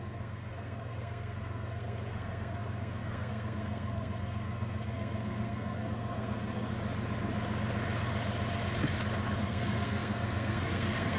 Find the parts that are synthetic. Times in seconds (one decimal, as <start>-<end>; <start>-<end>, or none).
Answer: 0.0-6.7; 9.4-11.2

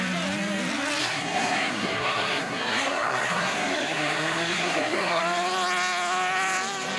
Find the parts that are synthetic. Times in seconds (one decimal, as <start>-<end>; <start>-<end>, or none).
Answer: 1.0-5.2

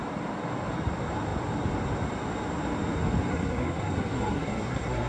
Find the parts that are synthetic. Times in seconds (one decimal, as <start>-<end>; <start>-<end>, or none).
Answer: 3.3-5.1

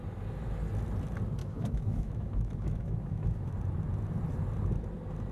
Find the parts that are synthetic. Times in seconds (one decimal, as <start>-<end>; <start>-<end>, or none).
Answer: 1.4-3.5

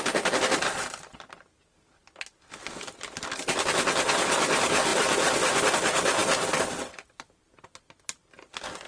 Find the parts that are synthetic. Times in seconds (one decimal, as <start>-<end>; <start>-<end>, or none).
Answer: 4.9-5.7

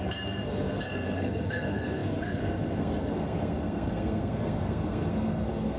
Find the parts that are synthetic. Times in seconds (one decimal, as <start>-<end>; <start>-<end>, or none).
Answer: 0.0-5.8

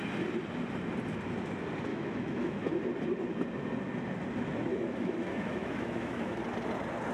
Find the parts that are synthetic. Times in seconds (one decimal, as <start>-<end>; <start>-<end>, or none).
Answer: 1.9-2.7; 4.7-6.4